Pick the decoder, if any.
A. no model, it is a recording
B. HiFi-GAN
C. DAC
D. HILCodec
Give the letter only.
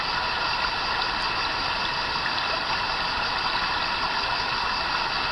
A